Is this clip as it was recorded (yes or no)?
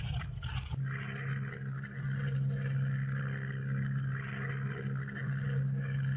yes